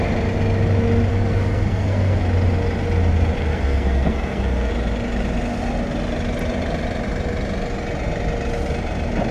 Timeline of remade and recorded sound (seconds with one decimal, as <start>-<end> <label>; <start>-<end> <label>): 0.0-1.1 recorded; 1.1-2.2 remade; 2.2-3.5 recorded; 3.5-4.7 remade; 4.7-9.3 recorded